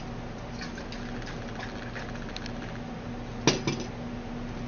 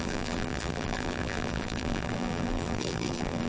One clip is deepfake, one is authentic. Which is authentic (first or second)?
first